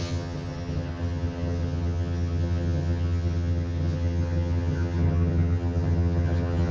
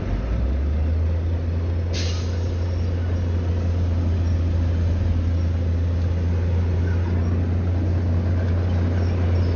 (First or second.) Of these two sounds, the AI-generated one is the first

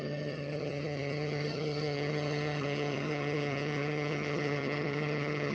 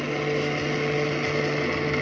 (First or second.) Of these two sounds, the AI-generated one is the first